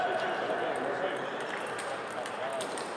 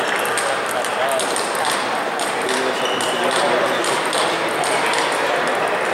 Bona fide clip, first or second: second